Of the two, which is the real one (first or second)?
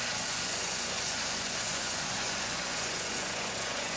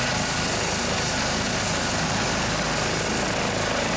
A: second